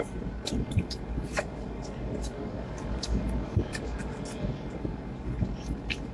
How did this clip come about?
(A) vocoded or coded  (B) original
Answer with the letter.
A